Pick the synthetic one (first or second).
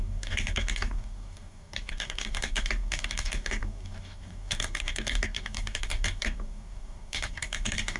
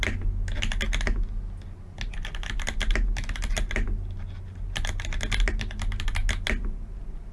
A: first